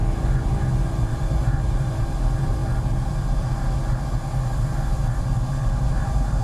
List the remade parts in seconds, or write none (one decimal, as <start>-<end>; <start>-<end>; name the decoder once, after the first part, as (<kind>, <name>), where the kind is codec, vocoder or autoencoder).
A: 1.1-2.6 (vocoder, BigVGAN v2); 3.2-3.8; 5.2-6.4